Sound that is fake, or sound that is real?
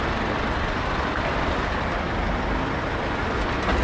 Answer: real